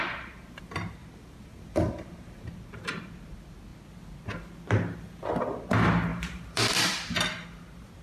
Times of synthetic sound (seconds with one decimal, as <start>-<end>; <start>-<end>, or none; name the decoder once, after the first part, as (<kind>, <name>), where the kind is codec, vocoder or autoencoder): 1.0-2.5 (vocoder, BigVGAN v2); 6.1-6.7

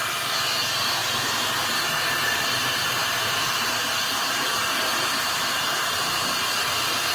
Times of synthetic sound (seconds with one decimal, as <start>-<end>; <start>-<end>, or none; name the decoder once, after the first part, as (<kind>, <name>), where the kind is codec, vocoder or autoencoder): none

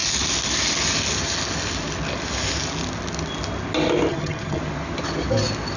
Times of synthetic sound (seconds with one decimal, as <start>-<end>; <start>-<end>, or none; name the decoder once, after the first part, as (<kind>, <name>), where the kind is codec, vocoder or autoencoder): 4.1-4.6 (vocoder, HiFi-GAN)

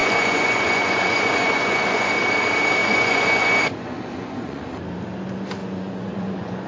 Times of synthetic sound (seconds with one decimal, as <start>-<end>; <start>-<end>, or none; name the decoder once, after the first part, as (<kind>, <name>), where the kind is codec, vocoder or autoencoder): 0.0-2.1 (vocoder, Vocos); 2.8-4.6; 5.6-6.7

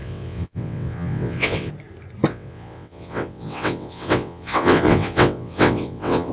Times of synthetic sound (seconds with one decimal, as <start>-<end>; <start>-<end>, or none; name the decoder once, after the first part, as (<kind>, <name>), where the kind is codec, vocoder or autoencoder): 0.0-1.7 (vocoder, WaveNeXt); 2.3-6.3

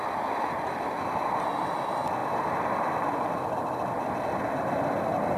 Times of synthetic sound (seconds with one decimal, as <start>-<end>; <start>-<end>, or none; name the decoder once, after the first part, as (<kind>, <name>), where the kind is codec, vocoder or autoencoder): none